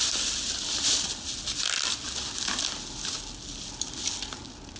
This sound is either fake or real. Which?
real